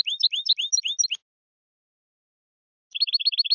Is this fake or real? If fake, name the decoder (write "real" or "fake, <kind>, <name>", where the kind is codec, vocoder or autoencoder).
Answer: real